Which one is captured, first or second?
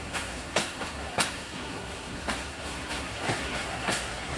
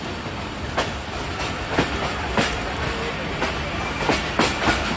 second